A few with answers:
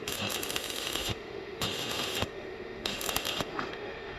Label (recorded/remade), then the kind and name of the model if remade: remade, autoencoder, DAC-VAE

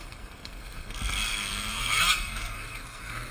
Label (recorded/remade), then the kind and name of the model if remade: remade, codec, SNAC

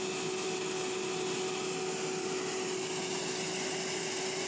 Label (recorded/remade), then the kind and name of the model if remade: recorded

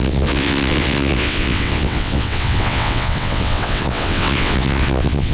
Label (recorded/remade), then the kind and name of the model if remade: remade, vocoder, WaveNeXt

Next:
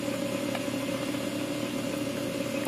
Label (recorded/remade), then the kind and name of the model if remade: recorded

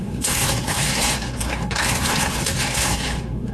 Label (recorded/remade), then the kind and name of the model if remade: remade, codec, SNAC